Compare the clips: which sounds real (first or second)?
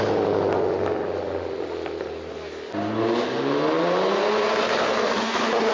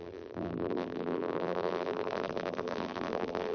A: first